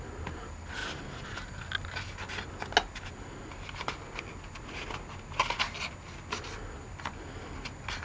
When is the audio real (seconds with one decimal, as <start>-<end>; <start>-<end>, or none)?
0.0-8.0